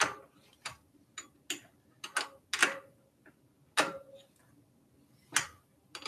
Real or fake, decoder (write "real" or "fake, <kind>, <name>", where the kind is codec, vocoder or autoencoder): real